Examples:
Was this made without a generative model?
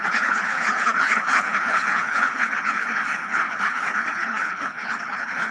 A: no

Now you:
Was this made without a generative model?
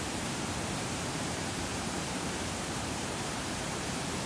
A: no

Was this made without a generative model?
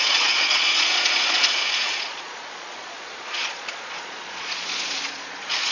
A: no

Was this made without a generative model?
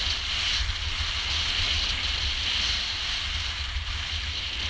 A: yes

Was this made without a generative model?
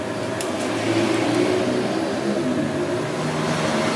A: yes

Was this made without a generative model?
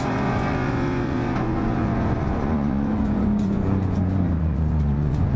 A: no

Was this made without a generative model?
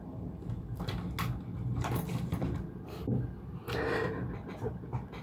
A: yes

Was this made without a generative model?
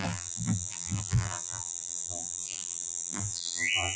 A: no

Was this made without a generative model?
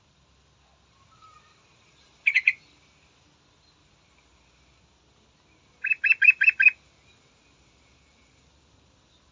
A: yes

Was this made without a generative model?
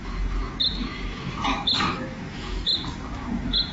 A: no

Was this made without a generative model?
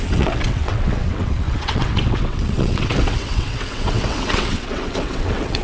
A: no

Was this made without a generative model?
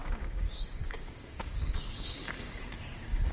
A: no